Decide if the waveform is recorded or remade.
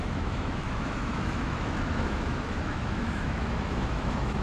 remade